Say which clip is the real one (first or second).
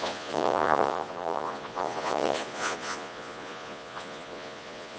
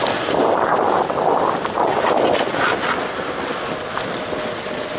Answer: second